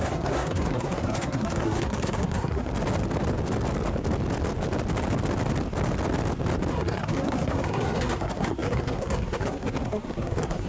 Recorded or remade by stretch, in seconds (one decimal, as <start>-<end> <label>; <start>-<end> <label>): 0.0-2.7 remade; 2.7-6.7 recorded; 6.7-10.7 remade